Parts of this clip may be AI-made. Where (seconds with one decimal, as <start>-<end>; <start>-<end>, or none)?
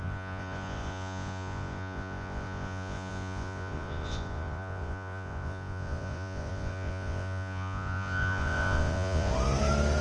0.0-9.3